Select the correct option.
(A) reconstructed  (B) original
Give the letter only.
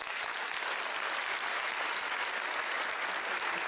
B